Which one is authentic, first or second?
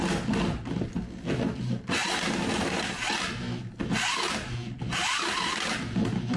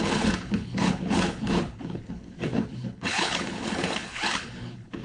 first